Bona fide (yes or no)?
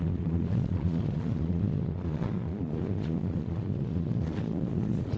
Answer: no